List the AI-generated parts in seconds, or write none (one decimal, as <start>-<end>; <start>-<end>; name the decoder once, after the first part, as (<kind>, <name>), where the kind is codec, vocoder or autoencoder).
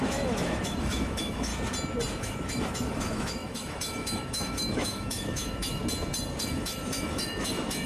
0.0-1.5 (autoencoder, DAC-VAE); 2.2-5.8; 6.4-7.9